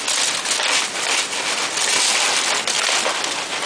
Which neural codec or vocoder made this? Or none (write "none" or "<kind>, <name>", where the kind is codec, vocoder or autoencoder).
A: none